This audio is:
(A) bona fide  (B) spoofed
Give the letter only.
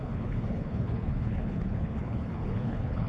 B